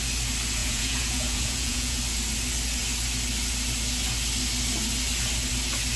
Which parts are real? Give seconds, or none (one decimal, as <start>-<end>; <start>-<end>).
0.0-0.6; 2.0-6.0